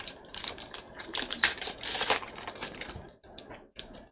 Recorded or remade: remade